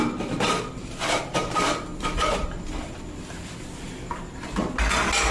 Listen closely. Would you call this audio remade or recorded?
recorded